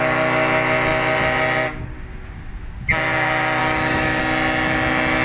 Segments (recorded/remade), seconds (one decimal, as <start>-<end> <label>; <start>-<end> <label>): 0.0-3.6 recorded; 3.6-4.2 remade; 4.2-5.2 recorded